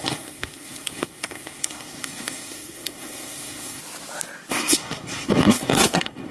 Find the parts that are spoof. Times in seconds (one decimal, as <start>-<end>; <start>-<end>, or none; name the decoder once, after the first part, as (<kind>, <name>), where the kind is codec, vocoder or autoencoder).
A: 0.0-3.8 (codec, SNAC); 4.5-6.3